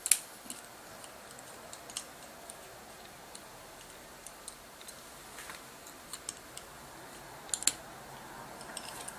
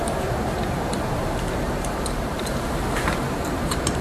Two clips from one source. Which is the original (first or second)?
first